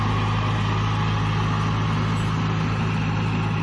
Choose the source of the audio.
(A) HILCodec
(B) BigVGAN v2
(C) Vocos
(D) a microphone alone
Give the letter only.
D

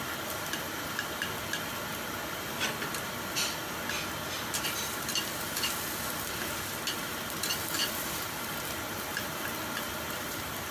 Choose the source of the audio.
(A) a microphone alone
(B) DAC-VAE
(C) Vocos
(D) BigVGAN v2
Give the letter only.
A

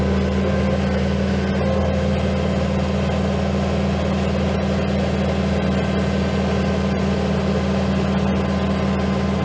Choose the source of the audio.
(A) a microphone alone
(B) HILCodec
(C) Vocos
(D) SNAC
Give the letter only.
A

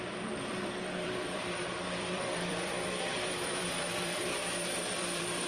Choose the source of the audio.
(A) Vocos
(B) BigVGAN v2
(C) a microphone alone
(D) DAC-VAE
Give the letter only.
B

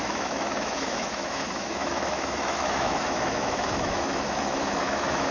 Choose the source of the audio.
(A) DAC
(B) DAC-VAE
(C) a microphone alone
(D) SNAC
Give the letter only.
B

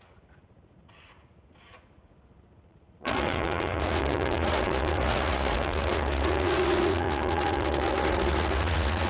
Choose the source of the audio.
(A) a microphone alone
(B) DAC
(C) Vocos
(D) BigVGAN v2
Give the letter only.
C